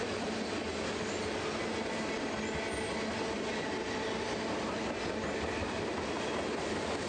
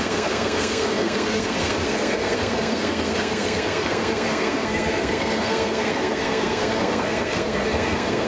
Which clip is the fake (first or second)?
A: second